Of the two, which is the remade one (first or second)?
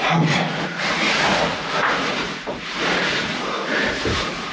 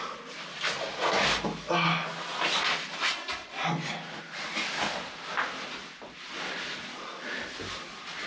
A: first